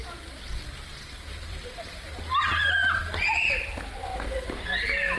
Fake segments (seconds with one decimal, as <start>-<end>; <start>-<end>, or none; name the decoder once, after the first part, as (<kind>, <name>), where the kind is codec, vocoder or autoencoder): 1.3-3.0 (vocoder, BigVGAN v2)